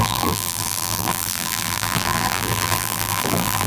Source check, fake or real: fake